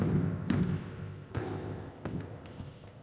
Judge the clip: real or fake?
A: fake